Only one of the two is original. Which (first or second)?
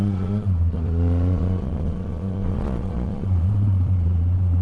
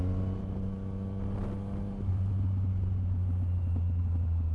second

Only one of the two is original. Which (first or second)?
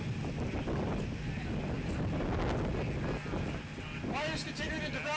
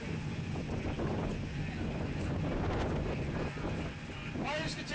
first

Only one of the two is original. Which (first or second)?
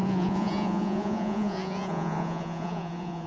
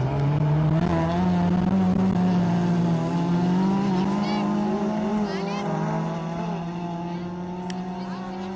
second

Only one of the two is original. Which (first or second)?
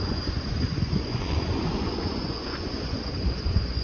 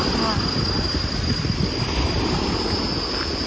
second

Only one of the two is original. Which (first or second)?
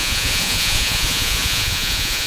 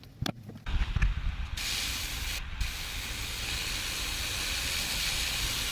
second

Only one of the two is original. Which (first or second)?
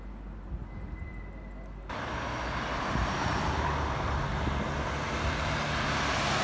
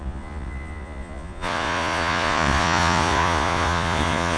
first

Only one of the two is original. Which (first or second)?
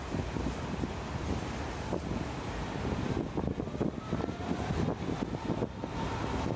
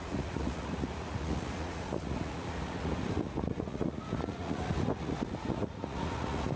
first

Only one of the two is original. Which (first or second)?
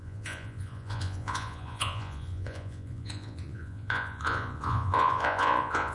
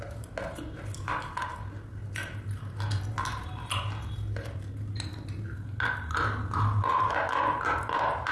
second